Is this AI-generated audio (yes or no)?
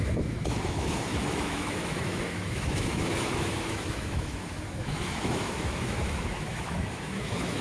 yes